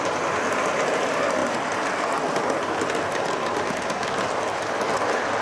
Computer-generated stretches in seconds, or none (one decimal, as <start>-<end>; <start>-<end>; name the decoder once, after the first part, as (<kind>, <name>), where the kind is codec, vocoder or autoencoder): none